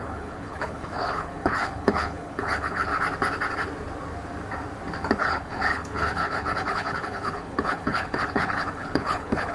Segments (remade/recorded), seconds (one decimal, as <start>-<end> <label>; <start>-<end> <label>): 0.0-2.9 remade; 2.9-5.2 recorded; 5.2-9.5 remade

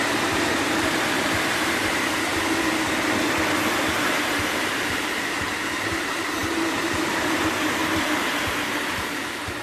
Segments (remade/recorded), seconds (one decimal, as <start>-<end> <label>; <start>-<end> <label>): 0.0-2.3 remade; 2.3-3.8 recorded; 3.8-9.6 remade

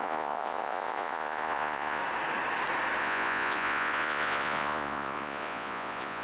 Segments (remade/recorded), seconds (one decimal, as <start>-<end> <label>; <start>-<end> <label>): 0.0-2.0 remade; 2.0-3.0 recorded; 3.0-6.2 remade

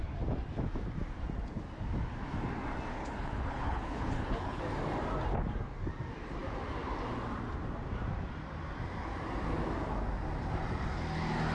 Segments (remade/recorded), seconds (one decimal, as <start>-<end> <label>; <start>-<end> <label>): 0.0-3.0 recorded; 3.0-4.6 remade; 4.6-11.5 recorded

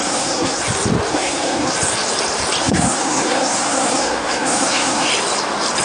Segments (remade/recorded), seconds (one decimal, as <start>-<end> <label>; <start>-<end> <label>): 0.0-0.6 remade; 0.6-1.1 recorded; 1.1-1.7 remade; 1.7-2.6 recorded; 2.6-5.1 remade; 5.1-5.8 recorded

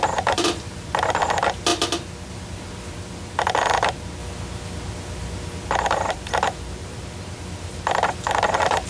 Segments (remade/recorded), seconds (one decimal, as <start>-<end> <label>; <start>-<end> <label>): 0.0-4.2 remade; 4.2-5.7 recorded; 5.7-8.9 remade

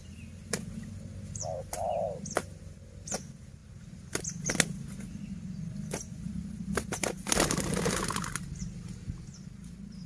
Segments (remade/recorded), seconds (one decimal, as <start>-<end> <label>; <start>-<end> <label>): 0.0-10.1 recorded

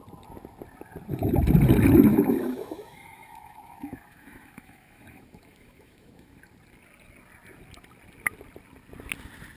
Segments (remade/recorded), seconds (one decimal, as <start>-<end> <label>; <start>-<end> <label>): 0.0-2.1 recorded; 2.1-6.4 remade; 6.4-9.6 recorded